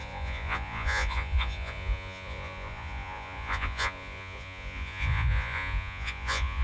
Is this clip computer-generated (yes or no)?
yes